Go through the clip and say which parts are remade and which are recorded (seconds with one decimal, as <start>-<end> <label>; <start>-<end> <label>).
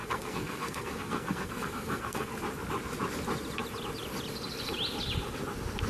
0.0-2.3 remade; 2.3-5.9 recorded